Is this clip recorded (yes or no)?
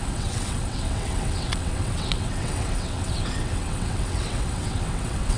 no